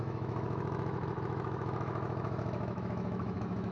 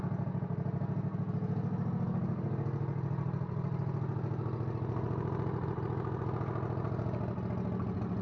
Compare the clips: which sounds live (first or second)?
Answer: second